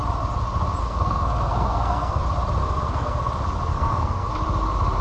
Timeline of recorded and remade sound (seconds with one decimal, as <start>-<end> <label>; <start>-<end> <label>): 0.0-0.8 recorded; 0.8-2.2 remade; 2.2-2.6 recorded; 2.6-3.3 remade; 3.3-3.7 recorded; 3.7-4.3 remade; 4.3-5.0 recorded